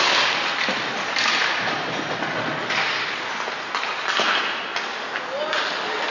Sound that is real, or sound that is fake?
real